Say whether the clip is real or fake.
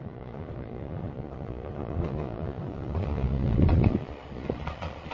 fake